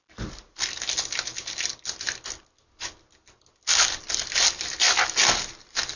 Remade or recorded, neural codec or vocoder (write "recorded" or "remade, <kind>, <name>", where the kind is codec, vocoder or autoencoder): recorded